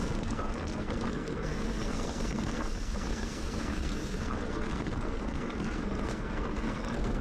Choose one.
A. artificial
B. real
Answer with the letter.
A